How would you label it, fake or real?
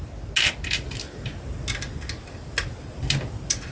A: real